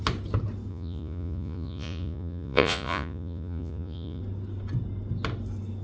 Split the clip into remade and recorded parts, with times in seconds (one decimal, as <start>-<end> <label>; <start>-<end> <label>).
0.0-0.7 recorded; 0.7-4.2 remade; 4.2-5.8 recorded